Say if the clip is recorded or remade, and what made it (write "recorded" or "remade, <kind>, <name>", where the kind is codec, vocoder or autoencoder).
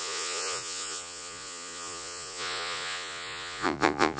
remade, vocoder, Vocos